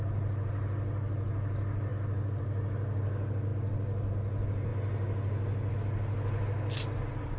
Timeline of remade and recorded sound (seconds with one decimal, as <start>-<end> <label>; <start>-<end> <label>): 0.0-7.4 recorded